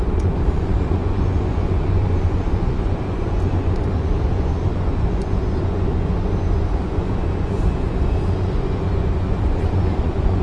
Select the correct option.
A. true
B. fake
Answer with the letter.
B